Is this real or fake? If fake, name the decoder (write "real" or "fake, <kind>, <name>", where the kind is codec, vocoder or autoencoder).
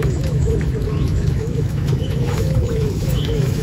fake, autoencoder, DAC-VAE